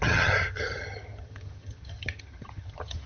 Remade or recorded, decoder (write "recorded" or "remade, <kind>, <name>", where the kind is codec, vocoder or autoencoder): remade, vocoder, HiFi-GAN